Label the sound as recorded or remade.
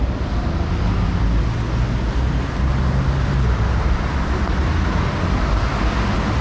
recorded